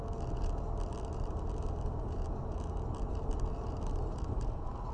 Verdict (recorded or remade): recorded